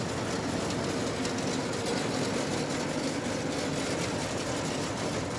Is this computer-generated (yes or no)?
no